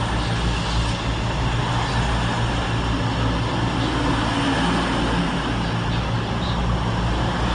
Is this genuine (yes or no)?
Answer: yes